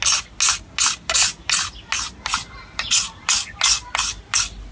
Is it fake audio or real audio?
real